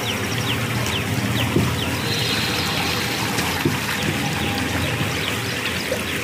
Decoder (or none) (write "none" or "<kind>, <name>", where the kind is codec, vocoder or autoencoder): none